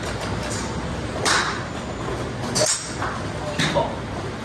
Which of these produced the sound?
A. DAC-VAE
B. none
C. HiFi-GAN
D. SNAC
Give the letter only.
B